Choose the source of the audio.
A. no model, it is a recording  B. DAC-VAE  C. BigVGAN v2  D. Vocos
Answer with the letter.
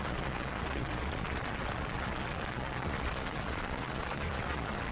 D